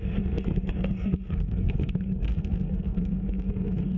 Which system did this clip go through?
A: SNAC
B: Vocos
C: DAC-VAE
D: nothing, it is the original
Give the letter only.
A